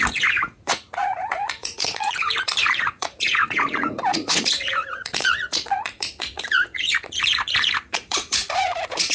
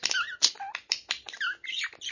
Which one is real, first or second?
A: second